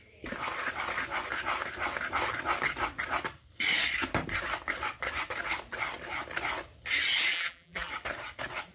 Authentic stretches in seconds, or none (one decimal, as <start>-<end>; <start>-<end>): 0.0-7.3; 7.9-8.7